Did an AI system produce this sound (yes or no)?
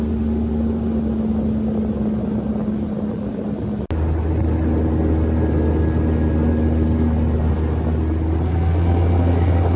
no